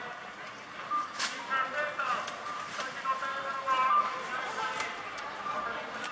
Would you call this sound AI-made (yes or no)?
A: no